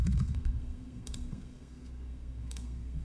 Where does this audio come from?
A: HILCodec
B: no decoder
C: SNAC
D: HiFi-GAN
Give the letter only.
C